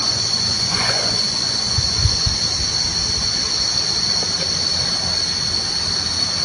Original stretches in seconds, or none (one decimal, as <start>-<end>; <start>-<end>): 2.3-6.4